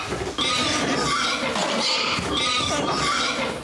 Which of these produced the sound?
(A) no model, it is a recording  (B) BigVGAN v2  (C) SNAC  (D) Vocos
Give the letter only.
A